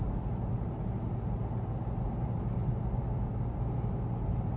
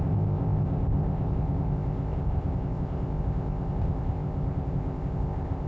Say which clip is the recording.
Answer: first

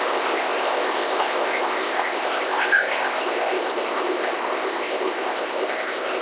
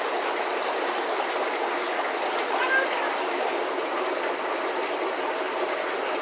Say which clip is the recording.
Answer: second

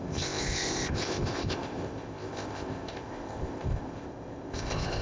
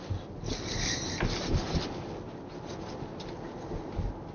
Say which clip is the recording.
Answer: second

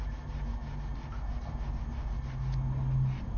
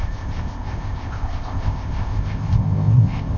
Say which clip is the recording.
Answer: first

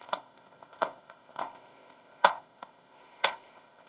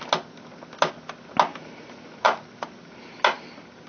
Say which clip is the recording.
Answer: second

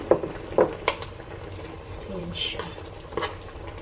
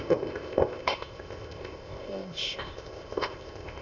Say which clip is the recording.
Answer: first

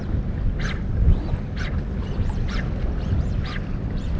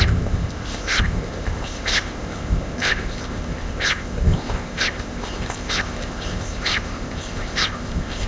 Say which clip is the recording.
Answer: first